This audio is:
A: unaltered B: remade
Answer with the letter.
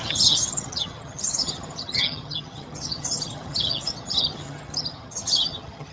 B